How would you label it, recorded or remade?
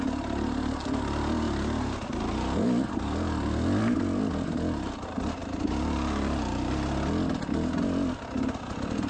recorded